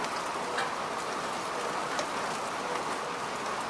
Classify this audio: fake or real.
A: real